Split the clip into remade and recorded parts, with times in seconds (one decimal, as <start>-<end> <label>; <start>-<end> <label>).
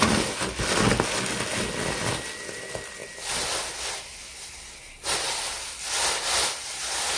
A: 0.0-7.2 recorded